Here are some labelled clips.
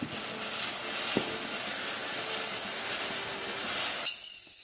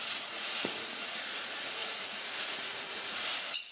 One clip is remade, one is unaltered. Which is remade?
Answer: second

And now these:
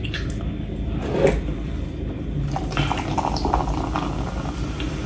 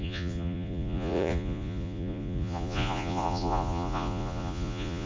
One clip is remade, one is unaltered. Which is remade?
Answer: second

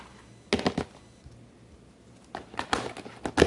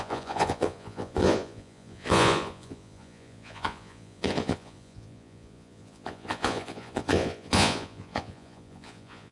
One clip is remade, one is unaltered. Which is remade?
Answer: second